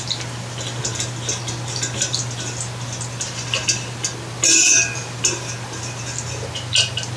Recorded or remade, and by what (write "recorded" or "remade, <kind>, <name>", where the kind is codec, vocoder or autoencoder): recorded